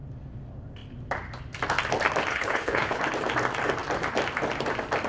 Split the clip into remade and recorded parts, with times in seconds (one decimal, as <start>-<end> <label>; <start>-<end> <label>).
0.0-2.3 recorded; 2.3-3.0 remade; 3.0-5.1 recorded